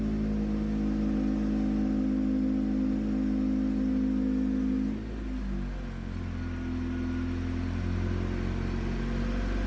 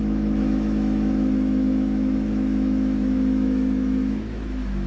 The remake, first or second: second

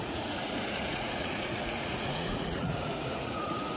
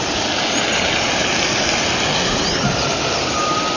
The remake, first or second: first